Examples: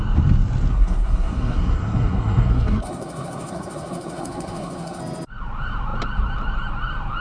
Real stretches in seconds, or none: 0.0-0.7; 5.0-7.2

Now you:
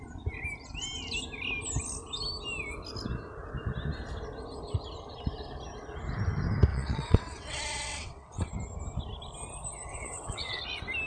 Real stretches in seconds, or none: 0.0-6.7; 8.5-9.9; 10.6-11.1

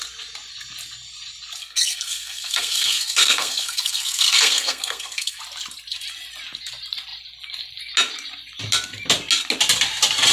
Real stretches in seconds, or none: 0.0-1.6; 5.4-10.3

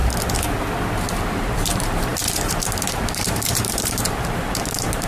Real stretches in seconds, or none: 0.0-1.3

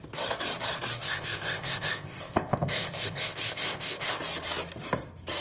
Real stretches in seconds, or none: 0.0-1.0; 4.2-5.4